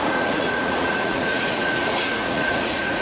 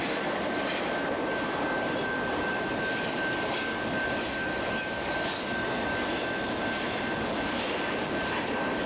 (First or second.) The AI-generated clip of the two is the first